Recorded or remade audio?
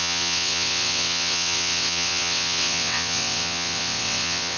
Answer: remade